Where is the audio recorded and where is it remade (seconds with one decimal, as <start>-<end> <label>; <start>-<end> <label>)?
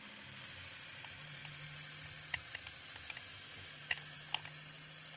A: 0.0-5.2 recorded